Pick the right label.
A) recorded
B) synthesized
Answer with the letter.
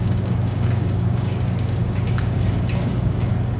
B